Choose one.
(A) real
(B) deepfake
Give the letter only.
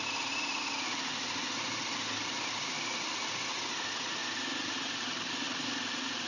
A